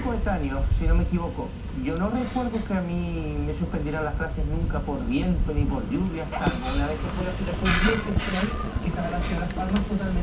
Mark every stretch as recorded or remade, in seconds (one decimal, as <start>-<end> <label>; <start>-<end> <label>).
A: 0.0-7.7 recorded; 7.7-8.9 remade; 8.9-10.2 recorded